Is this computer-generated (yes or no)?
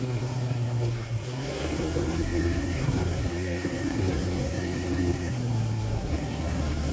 yes